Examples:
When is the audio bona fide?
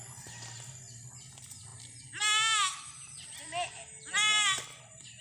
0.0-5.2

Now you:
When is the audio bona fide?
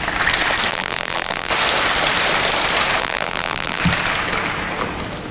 0.0-0.7; 1.5-3.0; 3.8-5.3